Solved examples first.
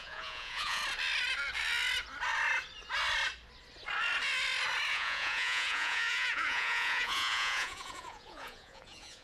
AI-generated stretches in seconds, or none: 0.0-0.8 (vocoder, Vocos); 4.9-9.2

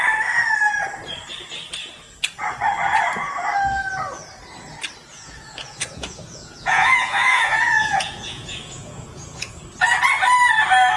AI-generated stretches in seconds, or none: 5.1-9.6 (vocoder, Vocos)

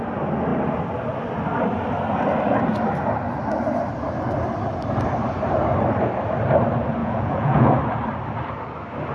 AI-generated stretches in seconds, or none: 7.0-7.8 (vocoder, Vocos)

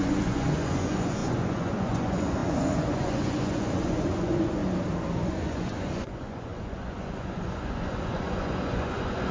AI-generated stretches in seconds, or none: 0.0-4.6 (vocoder, Vocos); 5.2-9.3

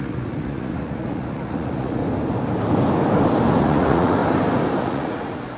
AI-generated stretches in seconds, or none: 0.0-2.0 (vocoder, Vocos); 3.6-4.2; 4.8-5.6

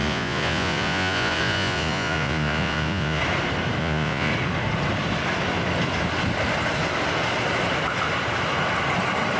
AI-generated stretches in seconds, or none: 0.0-3.2 (vocoder, Vocos); 3.8-4.3

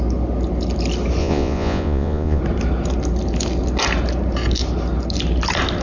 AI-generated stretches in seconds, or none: 1.2-2.4 (vocoder, Vocos)

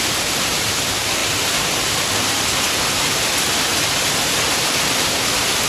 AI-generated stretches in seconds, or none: none